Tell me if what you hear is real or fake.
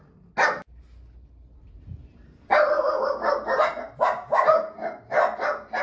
real